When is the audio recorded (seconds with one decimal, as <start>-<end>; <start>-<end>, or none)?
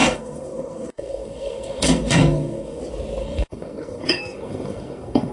2.8-3.2